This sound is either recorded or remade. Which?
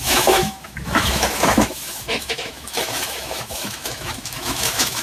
remade